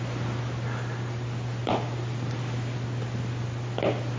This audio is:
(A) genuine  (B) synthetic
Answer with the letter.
A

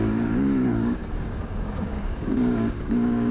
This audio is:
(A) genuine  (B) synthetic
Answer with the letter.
B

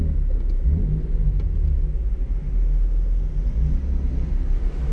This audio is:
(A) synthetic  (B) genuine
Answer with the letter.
B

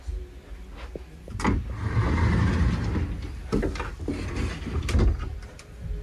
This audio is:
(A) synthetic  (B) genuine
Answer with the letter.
B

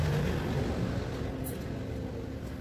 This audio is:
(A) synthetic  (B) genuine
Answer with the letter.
B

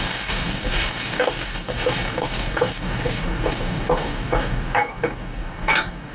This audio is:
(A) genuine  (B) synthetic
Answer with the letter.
B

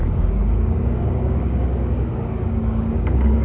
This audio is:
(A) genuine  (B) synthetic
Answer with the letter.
B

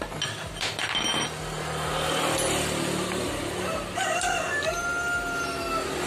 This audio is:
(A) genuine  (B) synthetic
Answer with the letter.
A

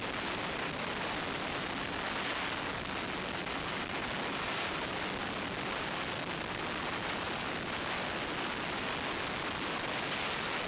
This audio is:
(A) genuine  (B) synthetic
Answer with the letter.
A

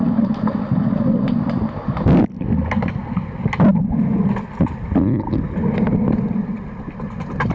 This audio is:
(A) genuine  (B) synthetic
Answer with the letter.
A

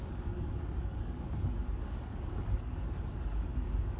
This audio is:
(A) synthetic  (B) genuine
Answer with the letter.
A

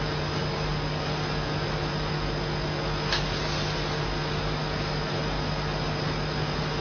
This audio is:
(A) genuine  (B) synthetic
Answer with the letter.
A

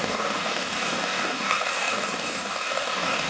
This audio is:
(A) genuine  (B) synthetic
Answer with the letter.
B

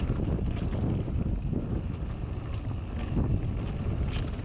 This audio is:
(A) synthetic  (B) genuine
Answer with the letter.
B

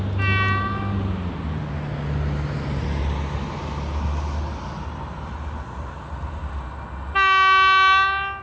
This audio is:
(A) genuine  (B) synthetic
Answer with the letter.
A